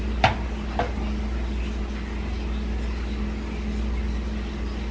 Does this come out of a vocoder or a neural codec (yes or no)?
no